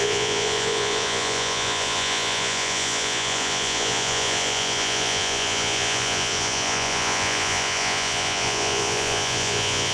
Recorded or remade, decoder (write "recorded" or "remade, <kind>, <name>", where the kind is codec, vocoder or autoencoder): remade, vocoder, Vocos